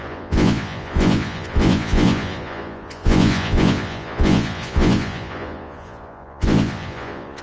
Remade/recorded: remade